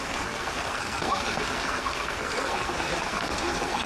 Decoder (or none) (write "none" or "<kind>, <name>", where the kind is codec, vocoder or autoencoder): codec, SNAC